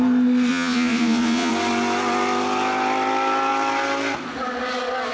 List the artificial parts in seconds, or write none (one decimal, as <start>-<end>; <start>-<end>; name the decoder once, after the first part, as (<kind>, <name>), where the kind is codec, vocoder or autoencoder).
0.5-1.5 (vocoder, Vocos)